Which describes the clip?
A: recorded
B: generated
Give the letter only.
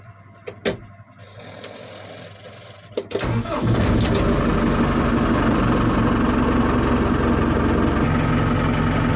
A